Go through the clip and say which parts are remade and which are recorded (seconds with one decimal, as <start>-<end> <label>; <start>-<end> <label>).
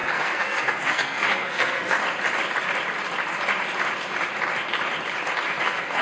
0.0-2.0 remade; 2.0-5.6 recorded; 5.6-6.0 remade